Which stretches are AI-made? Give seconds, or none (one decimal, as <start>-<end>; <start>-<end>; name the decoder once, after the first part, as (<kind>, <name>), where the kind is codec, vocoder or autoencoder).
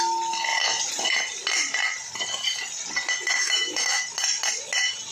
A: 3.4-4.0 (autoencoder, DAC-VAE)